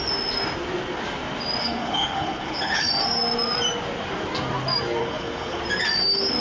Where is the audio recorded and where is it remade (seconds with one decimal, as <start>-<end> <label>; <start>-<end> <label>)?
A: 0.0-1.6 recorded; 1.6-2.9 remade; 2.9-5.0 recorded; 5.0-5.6 remade; 5.6-6.4 recorded